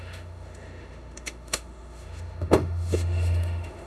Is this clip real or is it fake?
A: fake